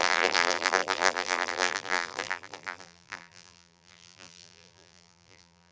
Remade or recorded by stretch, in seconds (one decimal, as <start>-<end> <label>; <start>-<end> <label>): 0.0-5.7 remade